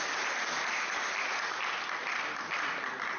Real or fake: real